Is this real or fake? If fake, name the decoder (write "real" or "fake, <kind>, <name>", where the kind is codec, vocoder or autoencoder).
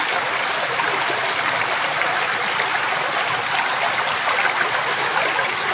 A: real